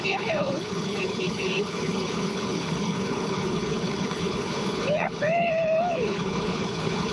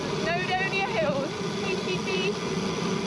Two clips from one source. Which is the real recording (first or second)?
second